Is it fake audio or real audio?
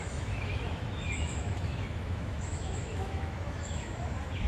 fake